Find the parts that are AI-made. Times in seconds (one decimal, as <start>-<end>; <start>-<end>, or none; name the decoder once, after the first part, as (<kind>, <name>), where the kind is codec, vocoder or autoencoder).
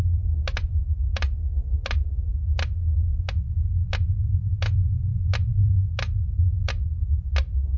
none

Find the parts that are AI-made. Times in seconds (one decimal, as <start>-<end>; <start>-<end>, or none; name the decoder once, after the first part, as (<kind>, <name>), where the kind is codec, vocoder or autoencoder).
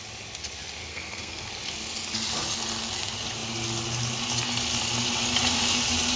0.9-1.5 (codec, SNAC)